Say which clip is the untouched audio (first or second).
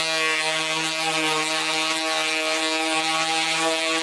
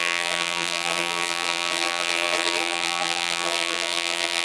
first